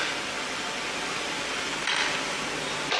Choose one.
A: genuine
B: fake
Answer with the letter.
A